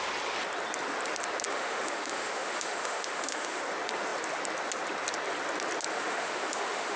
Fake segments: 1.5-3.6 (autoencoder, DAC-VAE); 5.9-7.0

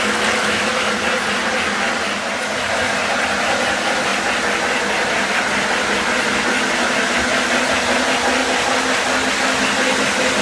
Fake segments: 0.4-0.9 (autoencoder, DAC-VAE)

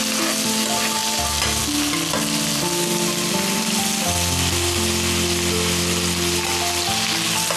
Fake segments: none

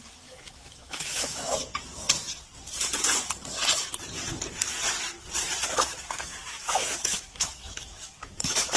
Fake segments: 0.0-1.7 (autoencoder, DAC-VAE); 5.7-8.8

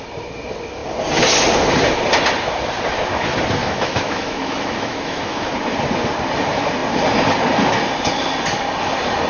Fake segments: 3.6-5.5 (autoencoder, DAC-VAE)

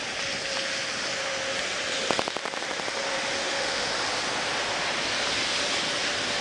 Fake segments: 3.4-3.9 (autoencoder, DAC-VAE)